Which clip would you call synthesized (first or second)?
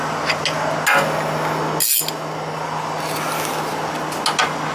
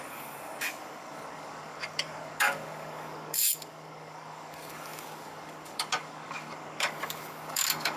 second